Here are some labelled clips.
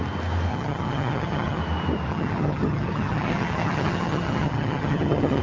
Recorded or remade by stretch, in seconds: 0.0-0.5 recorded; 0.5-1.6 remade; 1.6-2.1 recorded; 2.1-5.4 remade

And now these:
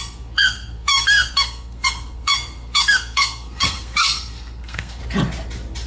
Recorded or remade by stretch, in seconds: 0.0-5.0 remade; 5.0-5.9 recorded

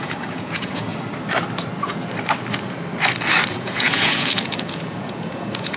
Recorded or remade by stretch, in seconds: 0.0-0.9 remade; 0.9-3.5 recorded; 3.5-5.8 remade

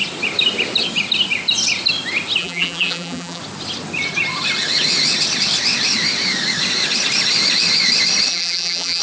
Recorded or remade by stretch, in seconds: 0.0-2.4 recorded; 2.4-3.4 remade; 3.4-8.3 recorded; 8.3-9.0 remade

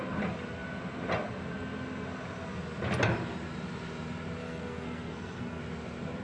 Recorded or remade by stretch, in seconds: 0.0-4.4 recorded; 4.4-5.6 remade; 5.6-6.2 recorded

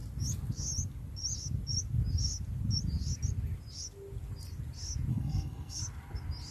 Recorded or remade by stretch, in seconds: 0.0-5.1 recorded; 5.1-5.8 remade; 5.8-6.5 recorded

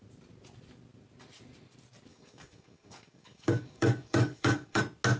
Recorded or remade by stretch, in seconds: 0.0-2.1 recorded; 2.1-4.8 remade; 4.8-5.2 recorded

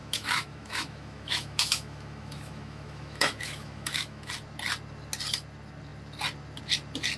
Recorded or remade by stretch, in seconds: 0.0-4.3 remade; 4.3-7.2 recorded